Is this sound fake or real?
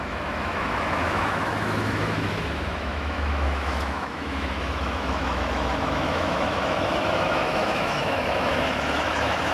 fake